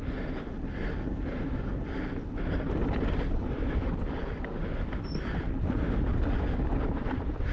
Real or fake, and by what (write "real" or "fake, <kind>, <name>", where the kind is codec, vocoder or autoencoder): real